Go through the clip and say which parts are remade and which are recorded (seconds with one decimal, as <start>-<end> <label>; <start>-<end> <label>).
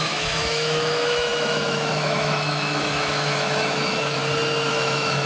0.0-4.2 remade; 4.2-4.7 recorded; 4.7-5.3 remade